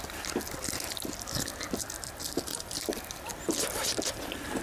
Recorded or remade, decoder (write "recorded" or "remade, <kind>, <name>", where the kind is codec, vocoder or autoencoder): recorded